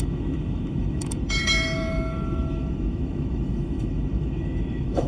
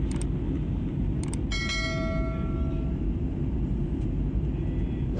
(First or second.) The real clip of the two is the second